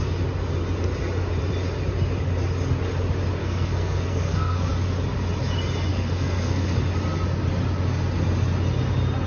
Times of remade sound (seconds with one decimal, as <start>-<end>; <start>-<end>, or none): 3.4-4.7; 5.9-6.8